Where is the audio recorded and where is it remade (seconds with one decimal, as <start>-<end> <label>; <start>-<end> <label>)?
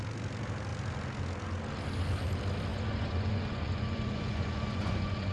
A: 0.0-2.7 recorded; 2.7-5.3 remade